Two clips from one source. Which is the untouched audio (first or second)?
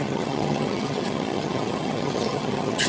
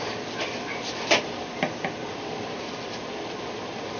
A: second